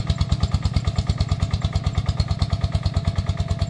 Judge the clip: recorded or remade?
recorded